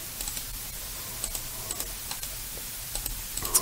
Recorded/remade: recorded